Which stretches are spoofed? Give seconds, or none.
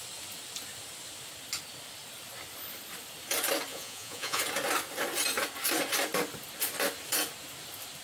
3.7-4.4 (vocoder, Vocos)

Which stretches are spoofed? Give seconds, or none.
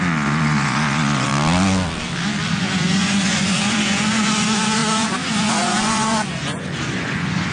0.0-1.3 (vocoder, Vocos); 2.5-7.5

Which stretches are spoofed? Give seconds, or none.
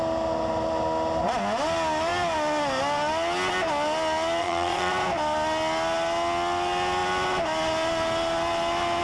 4.4-4.9 (vocoder, Vocos)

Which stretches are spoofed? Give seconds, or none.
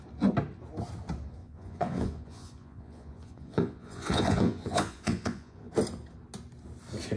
1.4-5.7 (vocoder, Vocos)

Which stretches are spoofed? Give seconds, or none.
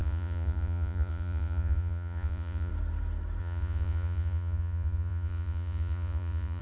0.0-2.7 (vocoder, Vocos); 3.4-6.6